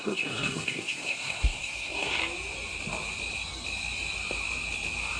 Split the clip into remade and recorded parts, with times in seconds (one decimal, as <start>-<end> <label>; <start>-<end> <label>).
0.0-2.2 remade; 2.2-5.2 recorded